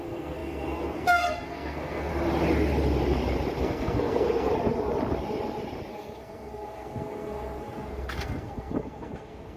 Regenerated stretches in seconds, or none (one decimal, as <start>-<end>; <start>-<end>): 0.0-2.1; 3.6-4.5; 5.9-9.6